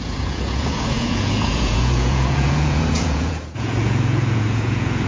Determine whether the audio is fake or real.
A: fake